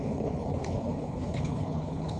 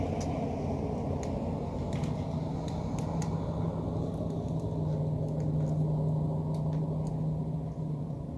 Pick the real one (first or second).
second